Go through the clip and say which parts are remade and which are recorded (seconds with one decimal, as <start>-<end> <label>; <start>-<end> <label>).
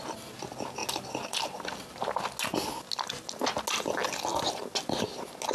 0.0-5.5 recorded